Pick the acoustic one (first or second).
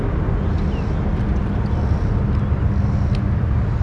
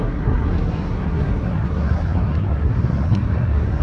first